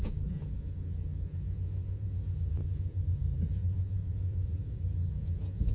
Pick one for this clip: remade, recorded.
remade